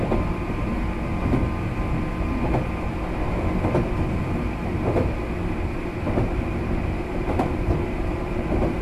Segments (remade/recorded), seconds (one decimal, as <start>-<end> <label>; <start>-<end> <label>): 0.0-1.1 remade; 1.1-5.4 recorded; 5.4-8.8 remade